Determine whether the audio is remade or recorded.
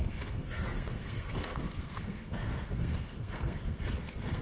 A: remade